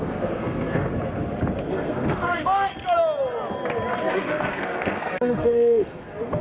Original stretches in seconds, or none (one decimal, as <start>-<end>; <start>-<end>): 0.9-1.7; 2.7-4.1